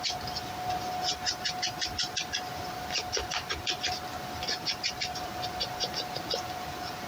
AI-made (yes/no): no